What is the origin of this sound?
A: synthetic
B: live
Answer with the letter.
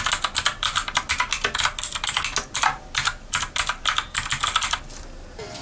B